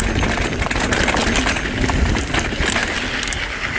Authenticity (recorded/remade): recorded